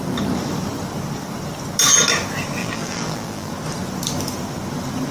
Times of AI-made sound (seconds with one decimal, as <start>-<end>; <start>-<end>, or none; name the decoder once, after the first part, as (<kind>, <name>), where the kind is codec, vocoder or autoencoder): 2.6-3.5 (vocoder, BigVGAN v2)